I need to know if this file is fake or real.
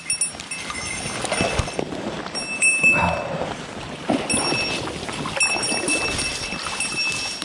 real